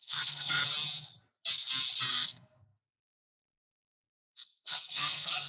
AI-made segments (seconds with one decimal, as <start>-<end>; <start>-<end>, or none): 0.0-0.6; 2.1-5.5

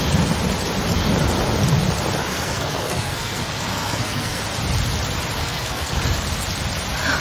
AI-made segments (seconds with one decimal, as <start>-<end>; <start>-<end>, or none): 2.3-4.4; 5.4-6.0